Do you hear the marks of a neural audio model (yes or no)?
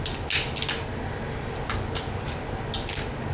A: no